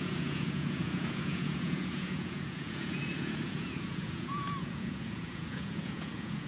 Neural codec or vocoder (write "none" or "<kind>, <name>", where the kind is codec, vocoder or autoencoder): vocoder, Vocos